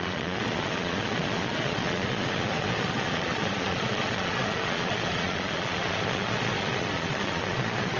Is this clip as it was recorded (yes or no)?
no